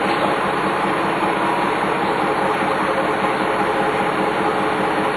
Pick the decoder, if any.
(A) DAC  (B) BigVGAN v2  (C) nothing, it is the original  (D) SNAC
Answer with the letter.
C